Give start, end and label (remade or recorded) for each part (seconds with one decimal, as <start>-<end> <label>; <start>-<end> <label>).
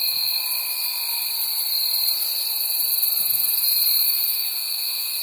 0.0-4.1 recorded; 4.1-5.2 remade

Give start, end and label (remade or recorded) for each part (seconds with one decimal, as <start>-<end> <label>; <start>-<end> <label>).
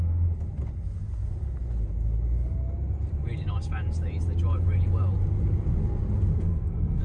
0.0-6.3 recorded; 6.3-7.0 remade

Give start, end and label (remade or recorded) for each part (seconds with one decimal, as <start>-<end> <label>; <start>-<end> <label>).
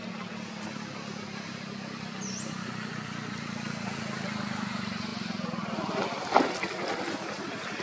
0.0-7.8 recorded